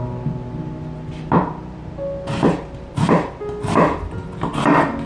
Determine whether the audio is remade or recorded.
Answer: recorded